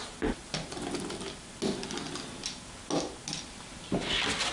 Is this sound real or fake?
real